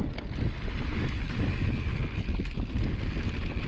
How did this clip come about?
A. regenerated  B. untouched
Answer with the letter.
B